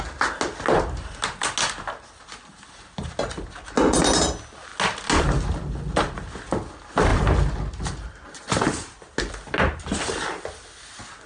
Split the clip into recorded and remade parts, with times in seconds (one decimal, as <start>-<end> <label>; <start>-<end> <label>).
0.0-11.3 recorded